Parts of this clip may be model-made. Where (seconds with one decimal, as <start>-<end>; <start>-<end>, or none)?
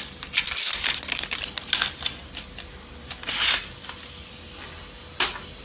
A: none